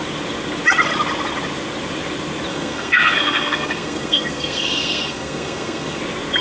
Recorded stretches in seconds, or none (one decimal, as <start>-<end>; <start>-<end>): 0.0-2.5; 6.0-6.4